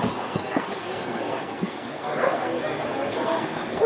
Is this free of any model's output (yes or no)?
no